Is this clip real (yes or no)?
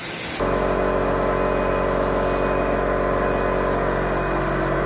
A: yes